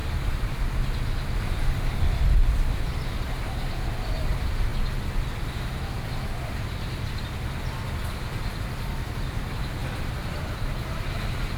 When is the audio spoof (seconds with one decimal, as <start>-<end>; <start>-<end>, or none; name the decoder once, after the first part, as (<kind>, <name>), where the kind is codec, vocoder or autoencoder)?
1.4-4.7 (vocoder, BigVGAN v2); 9.3-11.6